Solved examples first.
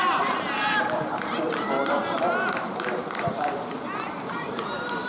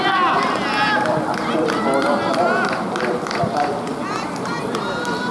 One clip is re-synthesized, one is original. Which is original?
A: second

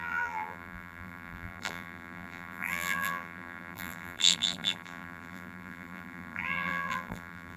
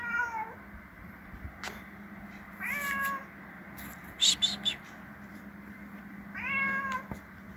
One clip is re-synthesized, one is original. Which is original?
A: second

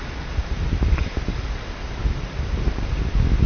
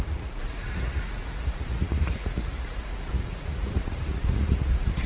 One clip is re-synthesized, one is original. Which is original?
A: first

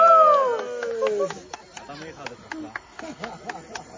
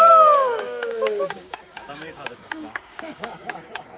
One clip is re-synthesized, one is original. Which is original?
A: first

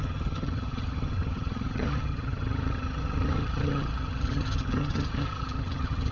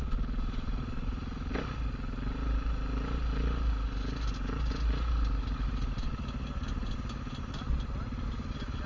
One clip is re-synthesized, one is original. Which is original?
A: second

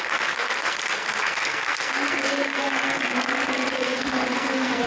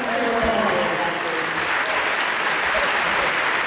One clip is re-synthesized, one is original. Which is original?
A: second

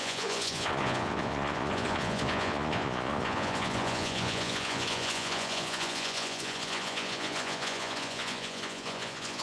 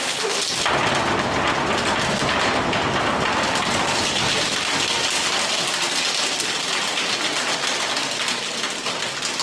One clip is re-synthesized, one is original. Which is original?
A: second